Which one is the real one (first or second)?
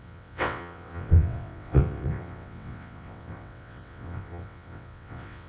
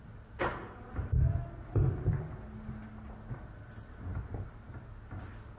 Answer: second